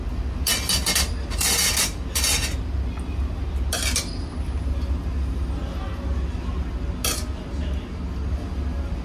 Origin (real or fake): real